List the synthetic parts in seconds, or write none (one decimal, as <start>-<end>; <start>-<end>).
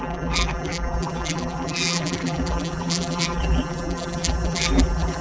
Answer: 0.0-5.2